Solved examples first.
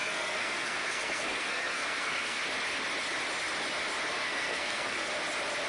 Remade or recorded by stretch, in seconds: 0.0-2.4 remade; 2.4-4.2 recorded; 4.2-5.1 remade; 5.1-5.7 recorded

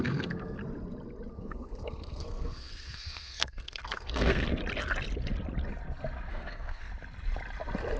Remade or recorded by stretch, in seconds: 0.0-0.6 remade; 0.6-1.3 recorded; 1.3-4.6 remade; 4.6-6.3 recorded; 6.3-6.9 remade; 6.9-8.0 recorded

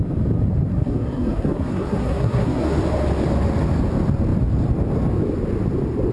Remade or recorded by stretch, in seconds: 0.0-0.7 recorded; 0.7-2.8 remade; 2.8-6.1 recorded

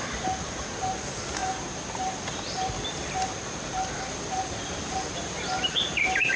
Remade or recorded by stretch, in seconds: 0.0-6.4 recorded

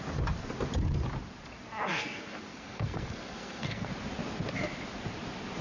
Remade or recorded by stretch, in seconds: 0.0-1.9 recorded; 1.9-3.9 remade; 3.9-5.6 recorded